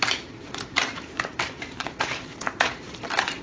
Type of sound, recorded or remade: remade